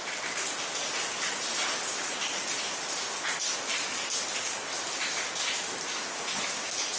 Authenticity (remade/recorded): recorded